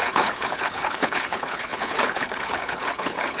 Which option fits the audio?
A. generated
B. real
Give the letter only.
A